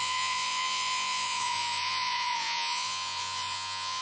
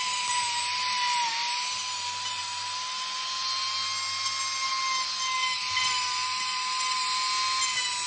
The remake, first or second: first